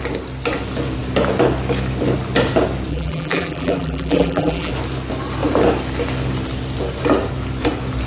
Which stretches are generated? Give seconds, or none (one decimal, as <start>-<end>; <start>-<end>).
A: 2.9-4.7